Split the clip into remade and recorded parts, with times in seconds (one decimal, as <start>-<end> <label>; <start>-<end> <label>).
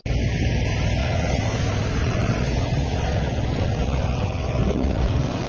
0.0-1.0 recorded; 1.0-1.6 remade; 1.6-2.0 recorded; 2.0-5.5 remade